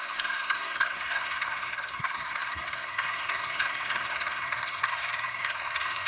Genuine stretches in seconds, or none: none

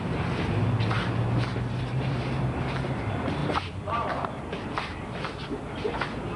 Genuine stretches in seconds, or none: 0.0-1.5; 2.4-3.4; 5.0-6.4

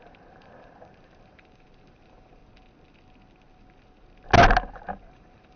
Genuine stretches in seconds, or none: 2.4-5.1